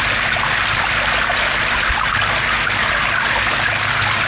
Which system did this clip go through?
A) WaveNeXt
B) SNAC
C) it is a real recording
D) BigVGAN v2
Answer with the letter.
C